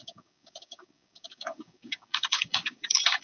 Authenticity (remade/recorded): remade